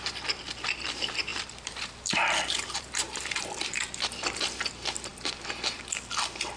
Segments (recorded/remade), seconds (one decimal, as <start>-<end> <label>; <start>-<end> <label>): 0.0-1.3 recorded; 1.3-4.5 remade; 4.5-5.1 recorded; 5.1-5.8 remade; 5.8-6.6 recorded